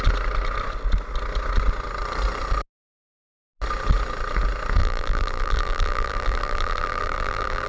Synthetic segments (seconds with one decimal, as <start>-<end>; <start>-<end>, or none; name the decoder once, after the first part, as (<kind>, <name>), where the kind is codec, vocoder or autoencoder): 4.8-7.7 (vocoder, BigVGAN v2)